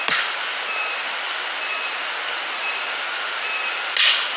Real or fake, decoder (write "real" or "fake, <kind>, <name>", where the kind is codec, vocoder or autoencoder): real